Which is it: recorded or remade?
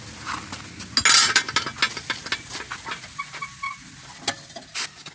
recorded